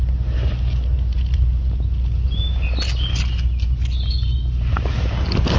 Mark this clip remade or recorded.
recorded